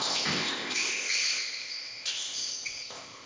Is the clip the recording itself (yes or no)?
no